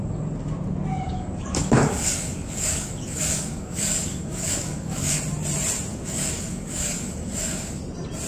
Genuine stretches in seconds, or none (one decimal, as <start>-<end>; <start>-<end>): 0.0-0.9; 5.2-5.9; 7.8-8.3